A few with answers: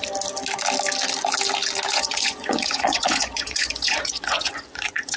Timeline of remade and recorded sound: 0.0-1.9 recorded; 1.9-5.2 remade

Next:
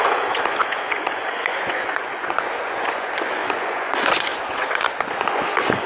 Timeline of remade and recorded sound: 0.0-5.9 remade